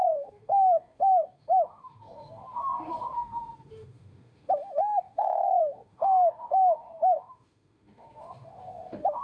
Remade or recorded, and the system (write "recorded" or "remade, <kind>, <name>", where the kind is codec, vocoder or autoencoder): remade, autoencoder, DAC-VAE